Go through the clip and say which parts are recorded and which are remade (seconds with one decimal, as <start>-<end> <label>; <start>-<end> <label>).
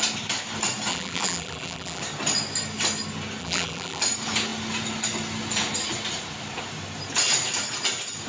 0.0-0.9 recorded; 0.9-2.0 remade; 2.0-3.4 recorded; 3.4-4.0 remade; 4.0-8.3 recorded